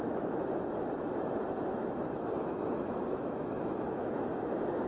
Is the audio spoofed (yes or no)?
yes